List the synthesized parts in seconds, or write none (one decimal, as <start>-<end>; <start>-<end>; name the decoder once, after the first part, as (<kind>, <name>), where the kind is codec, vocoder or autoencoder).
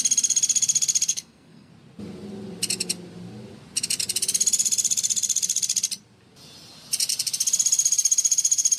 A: 1.1-1.7 (codec, SNAC)